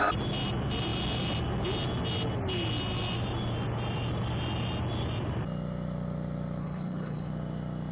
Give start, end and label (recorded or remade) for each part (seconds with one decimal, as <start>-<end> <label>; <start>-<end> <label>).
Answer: 0.0-6.6 recorded; 6.6-7.3 remade; 7.3-7.9 recorded